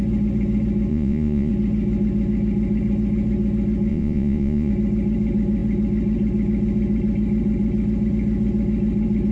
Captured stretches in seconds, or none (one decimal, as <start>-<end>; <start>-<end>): 0.0-0.9; 1.5-3.9; 4.7-9.3